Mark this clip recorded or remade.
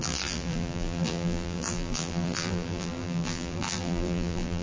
remade